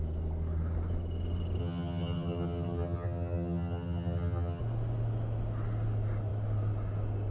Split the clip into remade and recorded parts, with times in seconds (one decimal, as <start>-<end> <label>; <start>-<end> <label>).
0.0-1.6 recorded; 1.6-4.6 remade; 4.6-7.3 recorded